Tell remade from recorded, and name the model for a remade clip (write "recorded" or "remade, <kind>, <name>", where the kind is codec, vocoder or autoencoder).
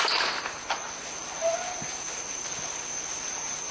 recorded